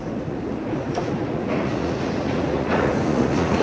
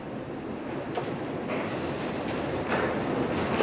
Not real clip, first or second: first